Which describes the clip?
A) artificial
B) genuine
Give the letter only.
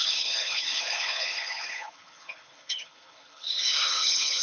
A